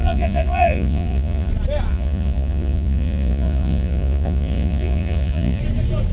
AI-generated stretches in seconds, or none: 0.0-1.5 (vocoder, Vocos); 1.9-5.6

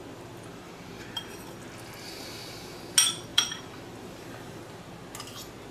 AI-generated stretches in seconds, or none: 0.5-1.2 (vocoder, BigVGAN v2); 3.3-4.6

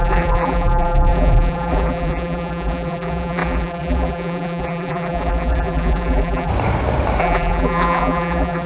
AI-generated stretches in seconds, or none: 0.0-6.5 (vocoder, BigVGAN v2); 7.2-8.7

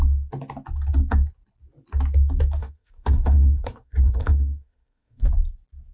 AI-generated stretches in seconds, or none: 2.6-5.3 (codec, SNAC)

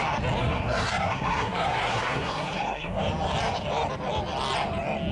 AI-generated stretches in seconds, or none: 0.4-3.0 (codec, SNAC)

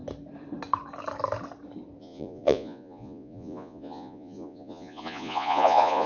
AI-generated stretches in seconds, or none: 2.0-6.1 (vocoder, Vocos)

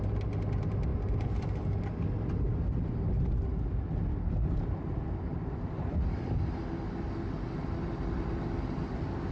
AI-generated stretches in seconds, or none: none

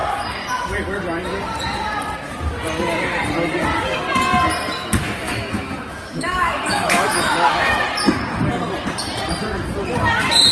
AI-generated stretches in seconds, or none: 4.8-7.8 (autoencoder, DAC-VAE)